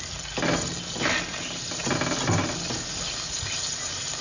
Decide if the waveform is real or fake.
real